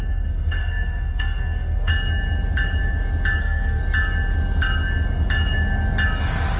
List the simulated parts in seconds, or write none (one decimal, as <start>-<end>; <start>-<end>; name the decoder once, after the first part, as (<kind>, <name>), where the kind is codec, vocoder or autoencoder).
0.0-1.9 (codec, SNAC); 3.4-3.8